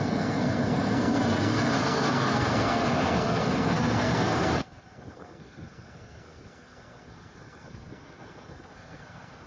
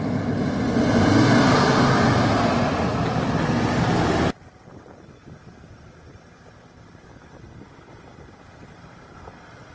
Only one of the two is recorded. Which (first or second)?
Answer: second